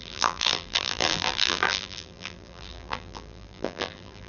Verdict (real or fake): fake